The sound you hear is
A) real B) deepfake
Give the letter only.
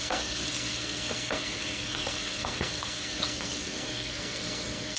B